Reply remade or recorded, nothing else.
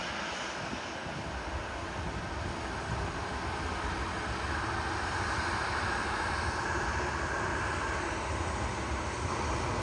recorded